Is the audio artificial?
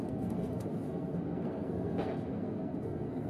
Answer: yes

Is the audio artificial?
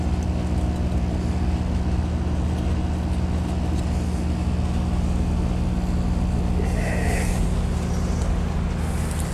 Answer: no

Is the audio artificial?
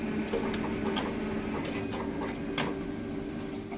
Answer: no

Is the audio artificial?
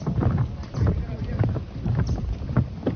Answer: no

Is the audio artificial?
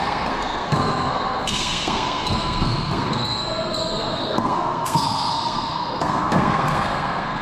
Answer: yes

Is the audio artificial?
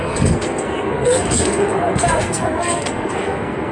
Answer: yes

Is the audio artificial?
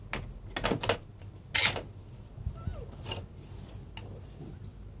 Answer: no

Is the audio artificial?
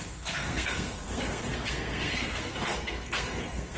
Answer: yes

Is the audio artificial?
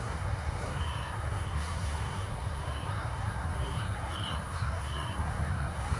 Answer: yes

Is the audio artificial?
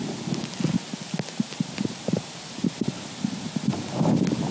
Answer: no